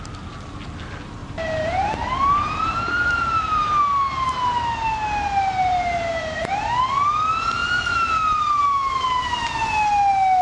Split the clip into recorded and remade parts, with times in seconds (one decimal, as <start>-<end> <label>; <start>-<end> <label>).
0.0-1.2 recorded; 1.2-3.8 remade; 3.8-5.7 recorded; 5.7-6.5 remade; 6.5-10.4 recorded

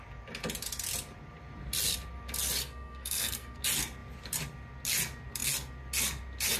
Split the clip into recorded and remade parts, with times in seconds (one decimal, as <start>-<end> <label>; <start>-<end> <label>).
0.0-2.6 recorded; 2.6-3.6 remade; 3.6-6.6 recorded

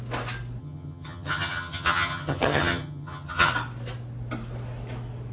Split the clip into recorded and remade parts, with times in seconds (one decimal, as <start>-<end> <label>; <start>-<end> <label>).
0.0-0.6 recorded; 0.6-3.5 remade; 3.5-5.3 recorded